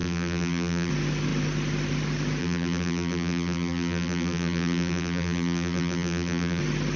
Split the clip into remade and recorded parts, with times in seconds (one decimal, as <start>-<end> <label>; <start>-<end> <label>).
0.0-0.9 remade; 0.9-2.4 recorded; 2.4-6.6 remade; 6.6-7.0 recorded